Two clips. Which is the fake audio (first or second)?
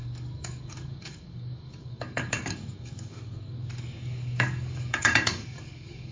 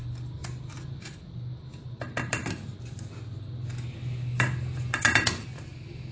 first